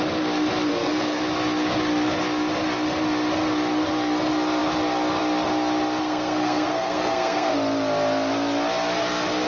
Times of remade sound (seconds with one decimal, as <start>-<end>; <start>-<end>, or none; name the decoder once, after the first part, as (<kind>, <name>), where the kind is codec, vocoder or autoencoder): 0.7-1.2 (codec, SNAC); 6.0-7.5